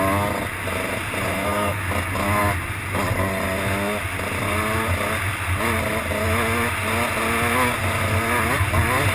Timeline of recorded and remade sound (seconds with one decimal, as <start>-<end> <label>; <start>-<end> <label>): 0.0-1.3 recorded; 1.3-1.8 remade; 1.8-9.1 recorded